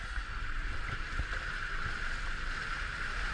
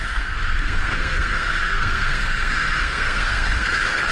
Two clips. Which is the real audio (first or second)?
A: first